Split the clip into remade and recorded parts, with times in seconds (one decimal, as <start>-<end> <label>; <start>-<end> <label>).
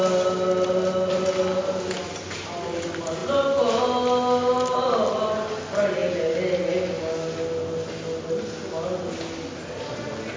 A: 0.0-10.4 recorded